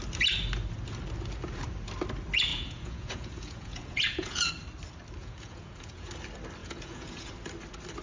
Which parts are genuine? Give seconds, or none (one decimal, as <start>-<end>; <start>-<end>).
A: 0.0-2.5; 4.5-5.2; 6.1-6.6; 7.3-8.0